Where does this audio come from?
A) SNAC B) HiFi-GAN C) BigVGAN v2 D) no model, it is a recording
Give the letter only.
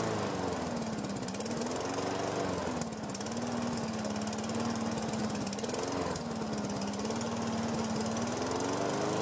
D